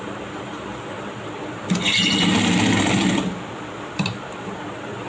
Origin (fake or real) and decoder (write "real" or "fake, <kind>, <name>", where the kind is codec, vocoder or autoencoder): real